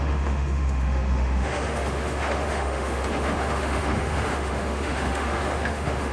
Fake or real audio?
fake